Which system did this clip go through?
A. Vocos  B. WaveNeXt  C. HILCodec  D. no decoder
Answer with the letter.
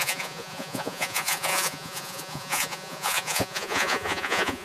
A